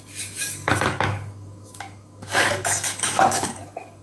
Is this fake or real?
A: fake